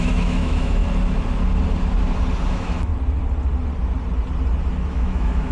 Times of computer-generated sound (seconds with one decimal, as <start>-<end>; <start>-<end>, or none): 0.0-0.8; 2.5-2.9; 4.9-5.5